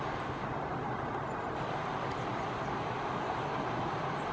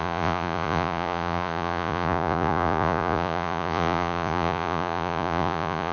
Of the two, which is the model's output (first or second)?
second